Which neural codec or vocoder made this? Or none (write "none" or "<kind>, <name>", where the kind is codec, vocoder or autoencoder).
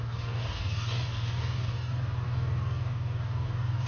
codec, DAC